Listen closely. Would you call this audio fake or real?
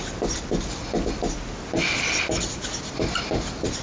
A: real